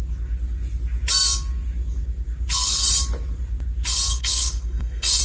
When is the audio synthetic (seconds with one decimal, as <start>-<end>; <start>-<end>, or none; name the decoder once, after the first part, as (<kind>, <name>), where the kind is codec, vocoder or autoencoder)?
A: 4.1-5.2 (codec, SNAC)